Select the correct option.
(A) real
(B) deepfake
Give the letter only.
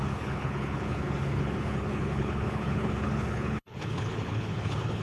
B